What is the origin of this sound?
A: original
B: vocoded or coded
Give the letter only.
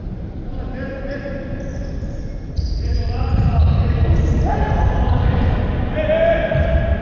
A